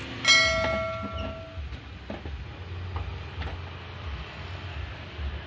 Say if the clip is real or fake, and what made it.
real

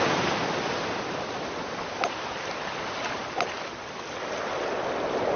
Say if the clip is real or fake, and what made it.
real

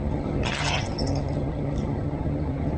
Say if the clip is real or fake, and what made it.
fake, vocoder, HiFi-GAN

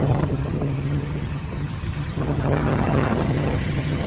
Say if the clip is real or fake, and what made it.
fake, vocoder, HiFi-GAN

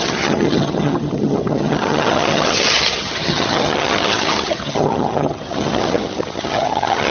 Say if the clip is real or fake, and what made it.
fake, vocoder, HiFi-GAN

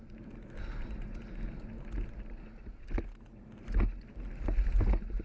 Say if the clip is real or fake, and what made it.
real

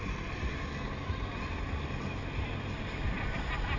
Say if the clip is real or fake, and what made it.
real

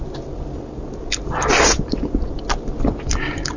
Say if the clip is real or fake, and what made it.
real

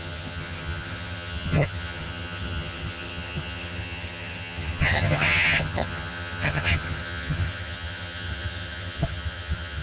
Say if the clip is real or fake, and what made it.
fake, vocoder, HiFi-GAN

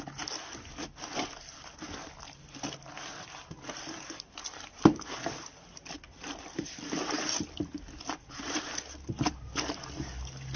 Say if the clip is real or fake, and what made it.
real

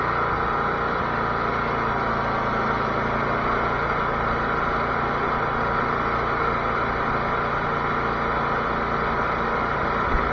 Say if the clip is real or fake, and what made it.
real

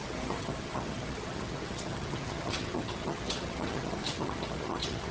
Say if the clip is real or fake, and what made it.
fake, vocoder, HiFi-GAN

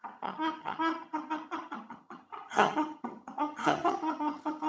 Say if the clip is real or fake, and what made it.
fake, vocoder, HiFi-GAN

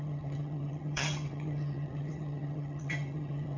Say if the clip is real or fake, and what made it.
fake, vocoder, HiFi-GAN